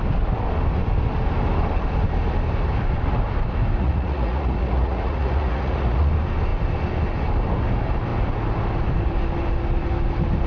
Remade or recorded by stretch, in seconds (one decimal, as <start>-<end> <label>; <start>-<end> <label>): 0.0-3.8 recorded; 3.8-6.1 remade; 6.1-10.5 recorded